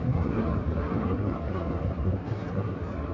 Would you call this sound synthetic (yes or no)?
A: yes